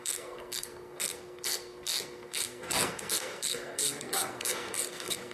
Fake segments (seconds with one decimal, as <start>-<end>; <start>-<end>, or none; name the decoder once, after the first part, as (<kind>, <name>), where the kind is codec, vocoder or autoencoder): 0.0-5.3 (codec, SNAC)